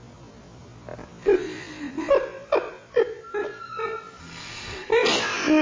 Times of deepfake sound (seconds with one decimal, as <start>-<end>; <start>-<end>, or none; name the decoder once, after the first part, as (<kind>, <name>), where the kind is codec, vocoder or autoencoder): 4.2-4.9 (codec, SNAC)